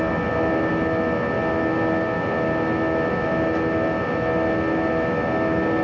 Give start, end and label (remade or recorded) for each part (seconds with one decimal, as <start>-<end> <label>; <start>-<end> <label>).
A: 0.0-5.8 recorded